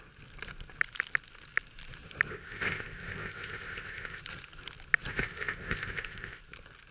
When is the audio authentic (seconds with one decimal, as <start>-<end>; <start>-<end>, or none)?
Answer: 0.0-2.3; 4.2-5.1; 6.4-6.9